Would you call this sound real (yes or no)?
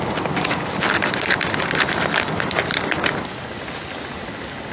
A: yes